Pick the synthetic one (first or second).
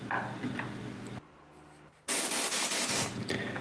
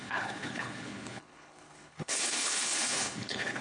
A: second